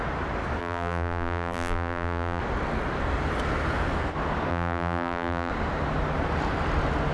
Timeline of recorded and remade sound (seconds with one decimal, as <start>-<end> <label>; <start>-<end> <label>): 0.0-0.6 recorded; 0.6-2.4 remade; 2.4-4.5 recorded; 4.5-5.5 remade; 5.5-7.1 recorded